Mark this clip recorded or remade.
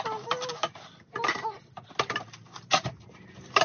recorded